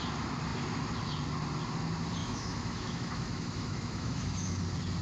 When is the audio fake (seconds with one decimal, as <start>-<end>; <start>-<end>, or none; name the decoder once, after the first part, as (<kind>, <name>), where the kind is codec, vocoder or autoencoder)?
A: 2.2-4.6 (autoencoder, DAC-VAE)